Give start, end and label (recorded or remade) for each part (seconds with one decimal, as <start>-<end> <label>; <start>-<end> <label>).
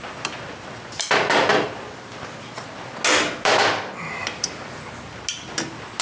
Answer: 0.0-6.0 recorded